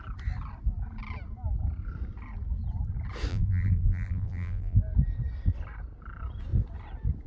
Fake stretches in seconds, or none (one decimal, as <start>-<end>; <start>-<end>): 3.3-4.8